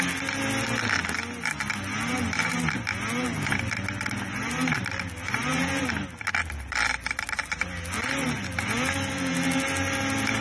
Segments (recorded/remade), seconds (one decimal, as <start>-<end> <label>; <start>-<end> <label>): 0.0-10.4 recorded